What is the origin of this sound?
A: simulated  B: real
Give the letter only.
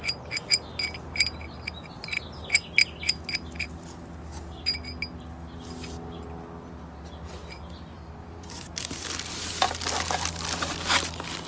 B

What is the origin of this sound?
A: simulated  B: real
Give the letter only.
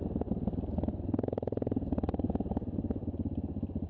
B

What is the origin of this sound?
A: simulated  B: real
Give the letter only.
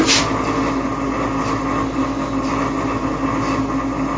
B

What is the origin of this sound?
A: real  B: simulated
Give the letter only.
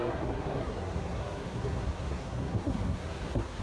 B